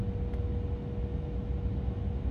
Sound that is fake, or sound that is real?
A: real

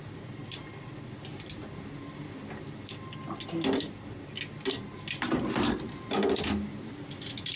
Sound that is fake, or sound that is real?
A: fake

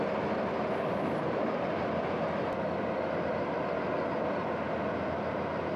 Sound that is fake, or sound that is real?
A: real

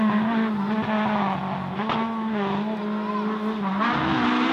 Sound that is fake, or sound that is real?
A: real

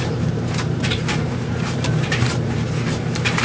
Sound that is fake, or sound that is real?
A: fake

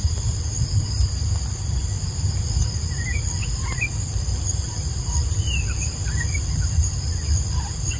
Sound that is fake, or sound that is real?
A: fake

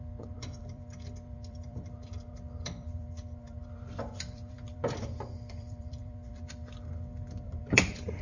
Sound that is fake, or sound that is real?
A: fake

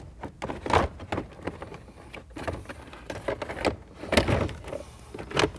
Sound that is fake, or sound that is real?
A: real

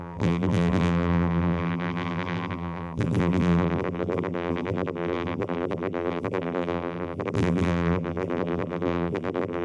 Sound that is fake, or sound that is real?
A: fake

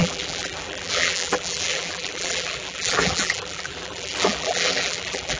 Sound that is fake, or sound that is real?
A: fake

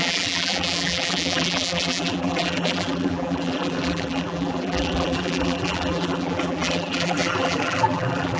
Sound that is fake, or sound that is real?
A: fake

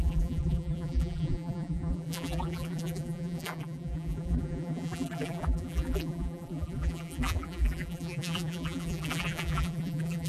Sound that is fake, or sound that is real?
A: fake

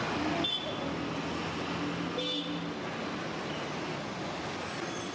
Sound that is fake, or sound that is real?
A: real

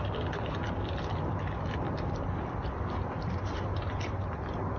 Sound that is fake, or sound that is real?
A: fake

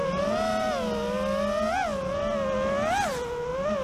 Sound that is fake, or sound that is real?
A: real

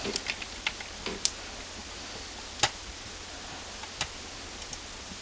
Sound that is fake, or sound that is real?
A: real